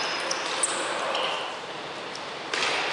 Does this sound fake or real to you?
real